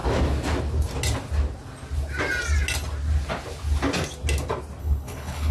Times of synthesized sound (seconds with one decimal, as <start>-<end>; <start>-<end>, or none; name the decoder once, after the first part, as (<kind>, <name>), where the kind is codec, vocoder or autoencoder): 4.8-5.5 (codec, HILCodec)